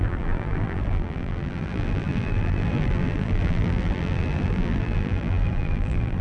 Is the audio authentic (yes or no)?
no